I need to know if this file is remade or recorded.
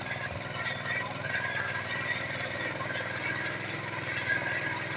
recorded